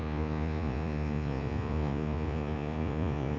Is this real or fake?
fake